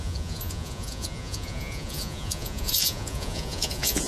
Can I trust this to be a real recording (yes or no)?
no